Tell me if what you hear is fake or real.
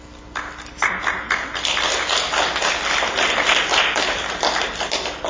real